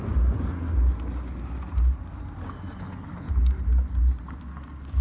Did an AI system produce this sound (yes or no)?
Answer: no